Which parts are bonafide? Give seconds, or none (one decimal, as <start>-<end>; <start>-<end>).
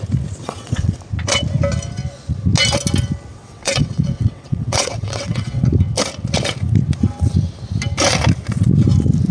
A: 0.0-0.4; 1.0-3.3; 5.6-9.3